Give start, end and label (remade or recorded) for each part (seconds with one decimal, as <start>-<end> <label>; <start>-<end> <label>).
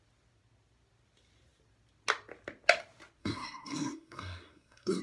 0.0-3.2 recorded; 3.2-5.0 remade